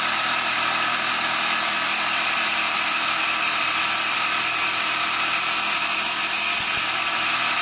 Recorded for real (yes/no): yes